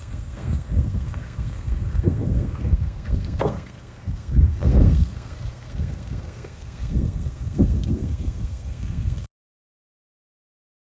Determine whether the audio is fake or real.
fake